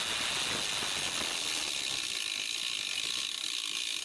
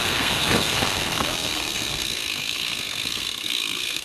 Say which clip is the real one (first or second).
first